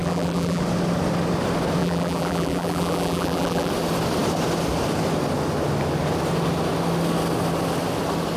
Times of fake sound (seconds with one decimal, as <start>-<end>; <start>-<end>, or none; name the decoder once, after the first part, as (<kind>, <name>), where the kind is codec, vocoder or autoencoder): 0.0-0.6 (vocoder, BigVGAN v2); 1.8-3.7